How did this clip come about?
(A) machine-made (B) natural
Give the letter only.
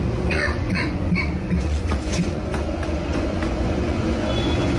A